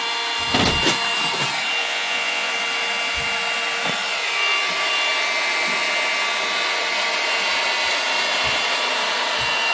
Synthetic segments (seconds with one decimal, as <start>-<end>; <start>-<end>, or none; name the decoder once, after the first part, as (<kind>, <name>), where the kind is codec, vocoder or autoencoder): 1.8-2.5 (vocoder, Vocos)